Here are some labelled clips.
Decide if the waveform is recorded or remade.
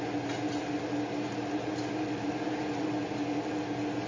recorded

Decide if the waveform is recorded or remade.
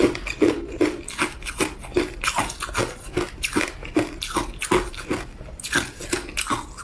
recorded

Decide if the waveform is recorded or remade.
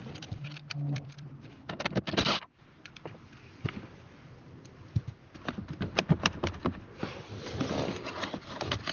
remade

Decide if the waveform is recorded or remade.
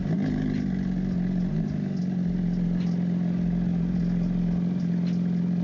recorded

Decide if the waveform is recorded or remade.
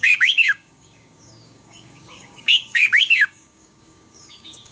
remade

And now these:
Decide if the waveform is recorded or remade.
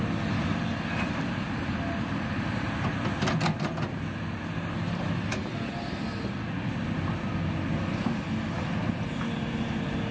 recorded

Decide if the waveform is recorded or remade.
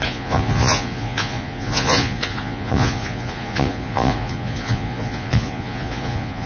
remade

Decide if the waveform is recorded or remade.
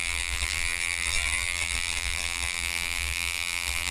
remade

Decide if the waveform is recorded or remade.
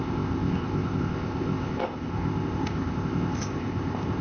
remade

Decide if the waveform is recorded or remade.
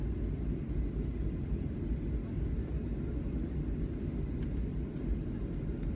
recorded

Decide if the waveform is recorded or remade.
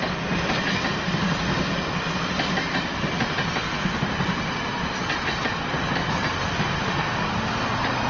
recorded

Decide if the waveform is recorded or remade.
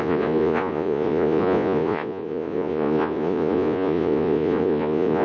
remade